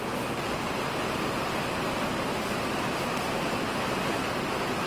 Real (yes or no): yes